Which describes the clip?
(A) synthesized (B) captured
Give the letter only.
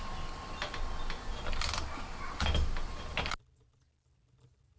B